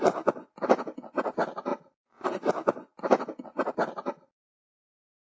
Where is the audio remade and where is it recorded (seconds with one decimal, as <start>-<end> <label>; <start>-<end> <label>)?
0.0-5.4 recorded